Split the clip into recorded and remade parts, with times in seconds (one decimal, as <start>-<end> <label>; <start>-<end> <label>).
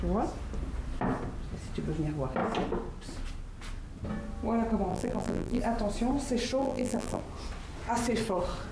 0.0-4.9 recorded; 4.9-5.6 remade; 5.6-6.6 recorded; 6.6-7.2 remade; 7.2-8.7 recorded